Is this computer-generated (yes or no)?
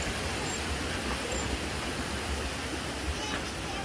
no